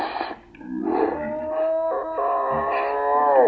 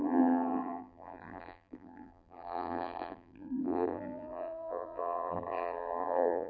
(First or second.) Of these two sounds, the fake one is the second